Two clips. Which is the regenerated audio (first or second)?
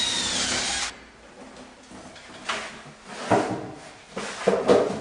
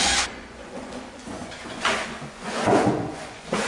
second